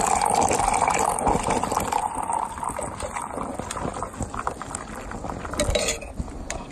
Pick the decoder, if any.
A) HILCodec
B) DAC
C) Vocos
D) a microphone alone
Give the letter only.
D